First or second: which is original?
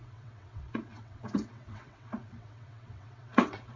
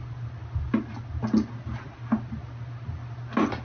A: second